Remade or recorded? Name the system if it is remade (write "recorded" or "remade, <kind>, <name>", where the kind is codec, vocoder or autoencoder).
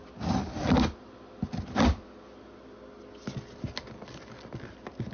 recorded